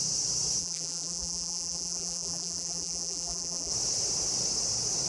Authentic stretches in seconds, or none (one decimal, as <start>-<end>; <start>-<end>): 0.0-0.6; 3.7-5.1